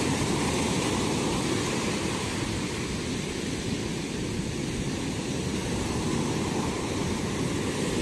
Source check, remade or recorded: recorded